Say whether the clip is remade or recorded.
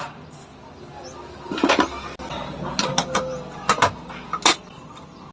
recorded